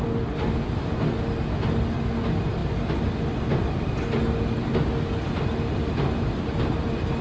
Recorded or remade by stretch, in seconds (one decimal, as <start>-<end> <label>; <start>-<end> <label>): 0.0-7.2 recorded